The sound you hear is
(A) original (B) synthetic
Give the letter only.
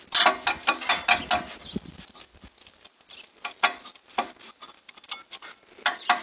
A